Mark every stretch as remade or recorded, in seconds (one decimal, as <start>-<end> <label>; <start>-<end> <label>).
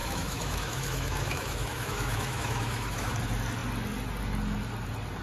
0.0-3.1 remade; 3.1-5.2 recorded